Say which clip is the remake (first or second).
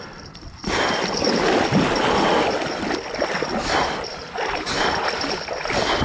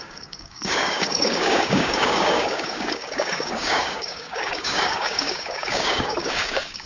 second